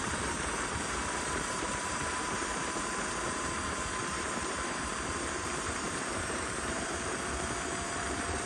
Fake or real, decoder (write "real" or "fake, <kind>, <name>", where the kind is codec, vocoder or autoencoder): fake, vocoder, BigVGAN v2